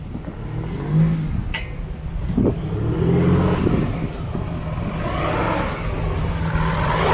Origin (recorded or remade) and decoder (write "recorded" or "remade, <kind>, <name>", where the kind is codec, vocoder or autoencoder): recorded